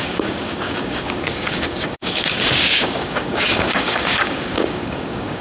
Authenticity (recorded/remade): remade